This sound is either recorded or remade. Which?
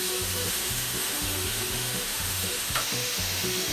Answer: remade